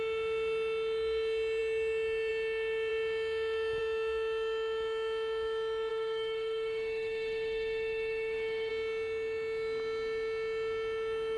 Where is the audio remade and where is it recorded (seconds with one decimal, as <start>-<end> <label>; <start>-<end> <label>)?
0.0-5.9 recorded; 5.9-8.7 remade; 8.7-11.4 recorded